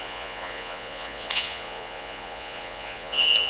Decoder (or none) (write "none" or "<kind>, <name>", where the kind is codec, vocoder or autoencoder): vocoder, Vocos